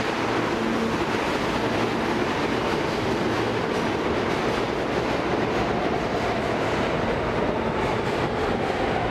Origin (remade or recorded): recorded